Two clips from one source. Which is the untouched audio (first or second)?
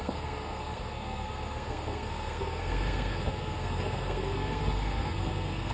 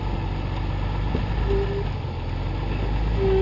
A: second